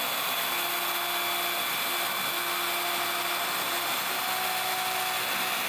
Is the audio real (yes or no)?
yes